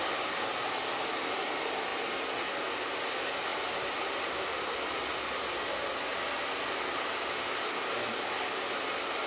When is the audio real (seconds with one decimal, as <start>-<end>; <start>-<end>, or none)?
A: 0.0-3.5; 4.2-9.3